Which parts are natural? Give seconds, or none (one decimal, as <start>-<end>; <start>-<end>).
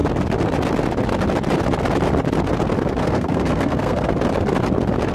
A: 0.0-3.0; 4.1-5.1